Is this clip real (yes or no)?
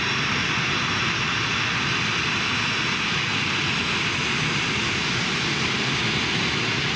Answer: yes